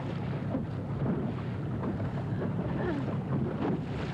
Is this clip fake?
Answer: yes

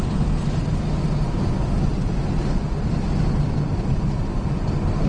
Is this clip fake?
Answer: no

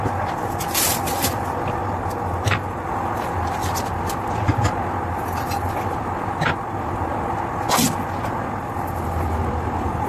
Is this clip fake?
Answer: no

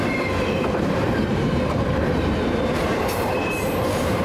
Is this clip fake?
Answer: yes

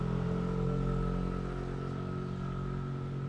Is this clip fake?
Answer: no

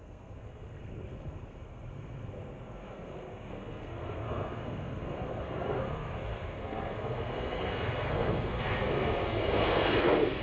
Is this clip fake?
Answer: yes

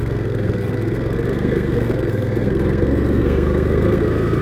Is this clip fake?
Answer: yes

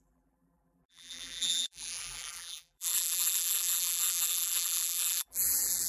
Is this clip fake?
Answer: yes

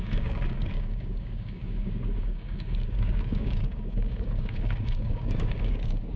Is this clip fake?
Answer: yes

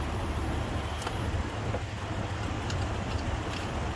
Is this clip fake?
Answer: no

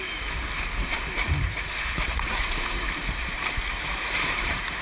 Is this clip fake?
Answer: yes